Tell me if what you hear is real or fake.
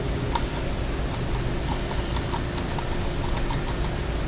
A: real